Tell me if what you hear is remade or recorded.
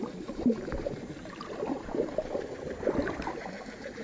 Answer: recorded